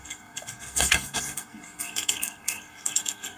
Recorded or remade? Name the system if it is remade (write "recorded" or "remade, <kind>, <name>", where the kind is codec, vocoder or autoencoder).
remade, codec, SNAC